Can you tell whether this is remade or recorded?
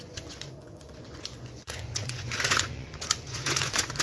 remade